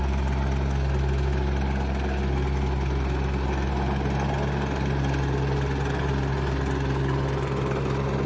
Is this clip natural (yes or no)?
yes